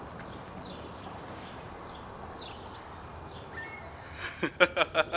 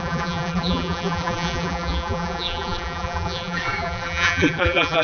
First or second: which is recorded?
first